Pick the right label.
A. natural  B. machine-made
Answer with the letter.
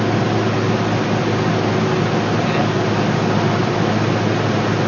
A